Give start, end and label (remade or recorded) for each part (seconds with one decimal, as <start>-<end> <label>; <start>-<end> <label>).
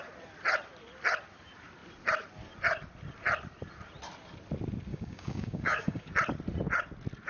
0.0-4.9 recorded; 4.9-6.1 remade; 6.1-7.3 recorded